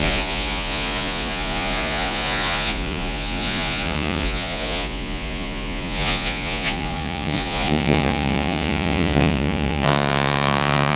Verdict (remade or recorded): remade